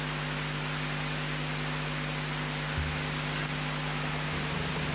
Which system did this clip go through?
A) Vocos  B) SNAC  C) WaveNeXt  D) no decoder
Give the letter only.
D